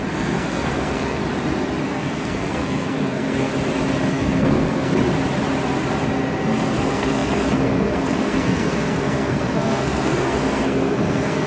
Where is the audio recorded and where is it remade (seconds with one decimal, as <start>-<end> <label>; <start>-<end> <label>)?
0.0-1.2 remade; 1.2-1.8 recorded; 1.8-3.5 remade; 3.5-4.1 recorded; 4.1-4.9 remade; 4.9-6.8 recorded; 6.8-11.5 remade